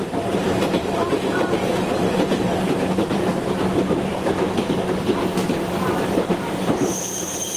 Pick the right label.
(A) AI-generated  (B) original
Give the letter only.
A